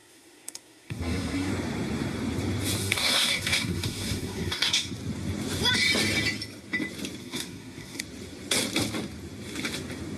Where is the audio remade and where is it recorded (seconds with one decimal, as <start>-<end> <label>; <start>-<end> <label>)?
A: 0.0-1.5 remade; 1.5-2.8 recorded; 2.8-4.9 remade; 4.9-7.2 recorded; 7.2-8.0 remade; 8.0-10.2 recorded